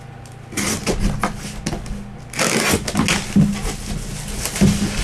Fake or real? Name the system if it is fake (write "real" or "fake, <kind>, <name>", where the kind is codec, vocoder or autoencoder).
real